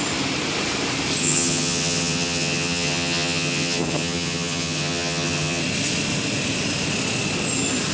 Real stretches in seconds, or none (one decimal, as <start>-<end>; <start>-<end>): 0.0-1.2; 5.6-7.9